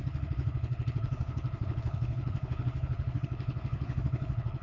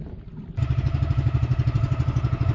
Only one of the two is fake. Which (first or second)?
first